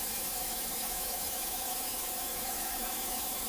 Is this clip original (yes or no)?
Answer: no